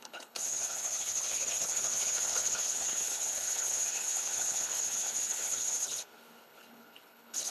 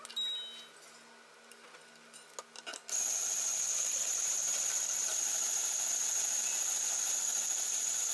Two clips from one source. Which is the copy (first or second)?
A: first